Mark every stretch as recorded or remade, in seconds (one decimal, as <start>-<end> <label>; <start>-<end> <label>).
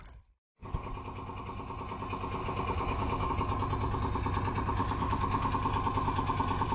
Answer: 0.0-2.4 recorded; 2.4-3.3 remade; 3.3-4.8 recorded; 4.8-5.5 remade; 5.5-6.7 recorded